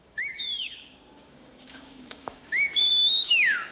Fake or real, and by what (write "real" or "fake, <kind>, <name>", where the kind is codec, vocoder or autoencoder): fake, codec, DAC